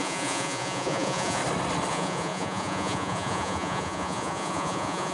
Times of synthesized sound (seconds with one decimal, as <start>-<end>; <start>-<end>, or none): 0.0-1.4; 1.9-5.1